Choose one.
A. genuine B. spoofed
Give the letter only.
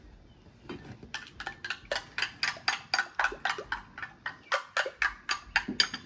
A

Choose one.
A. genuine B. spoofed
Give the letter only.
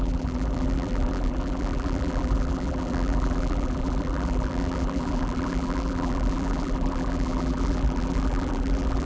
B